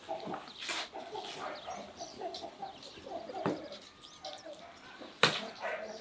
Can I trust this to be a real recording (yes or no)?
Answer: yes